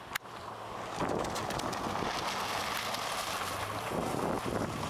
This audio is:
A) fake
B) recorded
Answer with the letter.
B